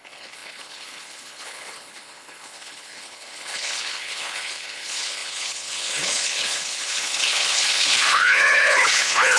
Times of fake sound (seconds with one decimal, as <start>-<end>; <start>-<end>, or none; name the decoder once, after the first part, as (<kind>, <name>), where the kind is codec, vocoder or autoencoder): 0.0-9.4 (codec, HILCodec)